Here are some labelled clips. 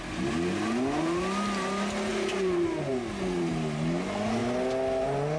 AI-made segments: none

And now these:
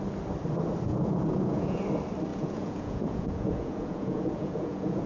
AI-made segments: 0.9-1.8; 2.3-5.1